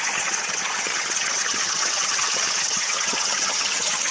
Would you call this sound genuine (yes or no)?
no